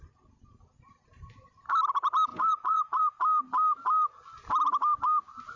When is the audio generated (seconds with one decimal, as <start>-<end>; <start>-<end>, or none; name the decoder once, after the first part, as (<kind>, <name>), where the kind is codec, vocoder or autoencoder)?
2.3-3.0 (vocoder, Vocos)